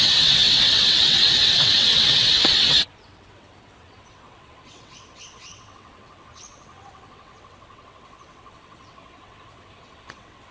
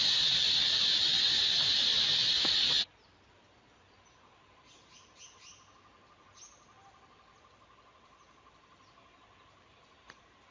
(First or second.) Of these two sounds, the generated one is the first